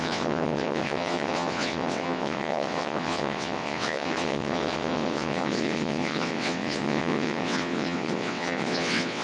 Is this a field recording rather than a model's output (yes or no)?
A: no